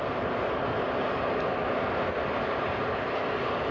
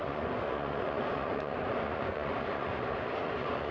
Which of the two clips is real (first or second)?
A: first